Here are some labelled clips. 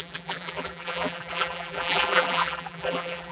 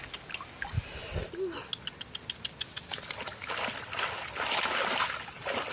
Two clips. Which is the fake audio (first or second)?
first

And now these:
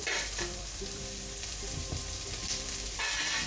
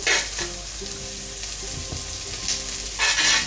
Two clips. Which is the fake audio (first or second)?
first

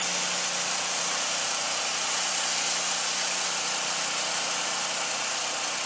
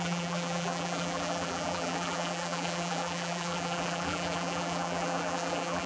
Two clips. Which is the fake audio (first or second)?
second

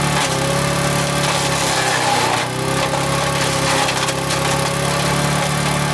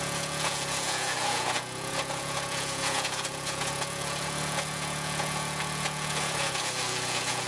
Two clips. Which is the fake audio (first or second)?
second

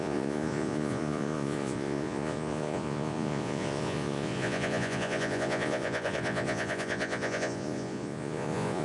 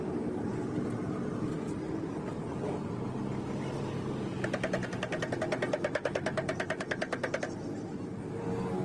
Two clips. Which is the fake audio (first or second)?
first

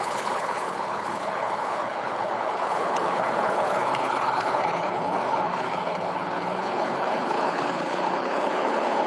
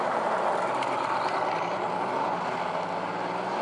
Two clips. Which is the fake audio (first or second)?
first